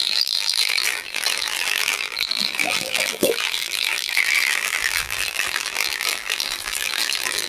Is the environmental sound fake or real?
fake